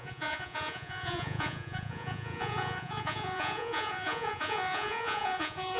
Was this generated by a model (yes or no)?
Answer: yes